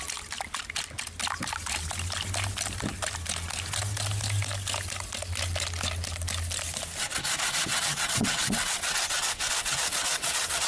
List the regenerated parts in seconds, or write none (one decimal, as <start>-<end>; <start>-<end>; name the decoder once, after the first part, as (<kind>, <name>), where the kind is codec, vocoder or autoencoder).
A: 7.7-10.7 (vocoder, WaveNeXt)